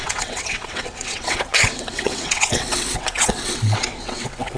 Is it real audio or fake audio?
fake